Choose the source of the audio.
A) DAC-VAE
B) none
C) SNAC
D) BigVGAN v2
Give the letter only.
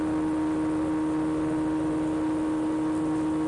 B